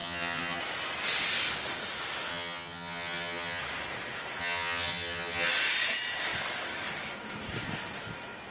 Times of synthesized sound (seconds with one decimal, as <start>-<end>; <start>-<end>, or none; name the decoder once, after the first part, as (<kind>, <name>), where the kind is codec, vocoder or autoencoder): 0.0-0.6 (vocoder, HiFi-GAN); 2.3-3.6; 4.4-5.5